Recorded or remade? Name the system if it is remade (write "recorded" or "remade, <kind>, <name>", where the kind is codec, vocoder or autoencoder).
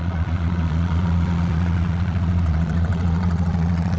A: remade, vocoder, Vocos